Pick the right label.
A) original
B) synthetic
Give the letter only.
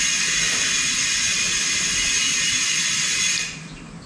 A